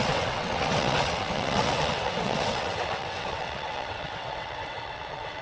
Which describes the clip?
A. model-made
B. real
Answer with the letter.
A